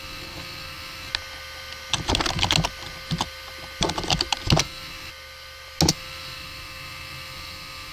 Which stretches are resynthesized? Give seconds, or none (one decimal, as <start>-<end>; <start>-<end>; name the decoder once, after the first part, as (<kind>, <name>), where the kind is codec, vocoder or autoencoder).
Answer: 0.0-1.1 (codec, SNAC); 4.6-5.1; 5.9-7.9